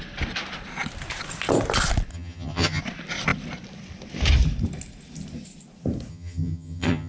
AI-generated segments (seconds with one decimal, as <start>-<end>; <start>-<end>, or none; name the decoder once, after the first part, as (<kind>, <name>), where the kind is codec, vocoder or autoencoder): 2.1-2.8 (vocoder, HiFi-GAN); 6.1-7.1